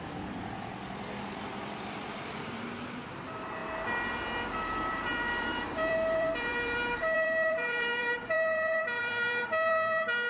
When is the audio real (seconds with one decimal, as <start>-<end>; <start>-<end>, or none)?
3.6-4.6